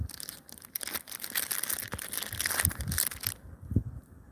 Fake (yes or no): no